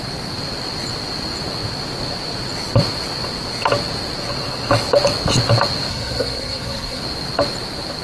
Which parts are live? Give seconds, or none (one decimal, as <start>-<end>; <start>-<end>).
0.0-5.9; 7.0-8.0